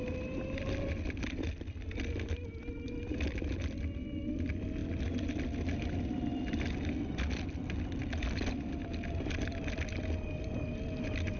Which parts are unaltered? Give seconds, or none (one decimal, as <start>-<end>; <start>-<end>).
0.0-11.4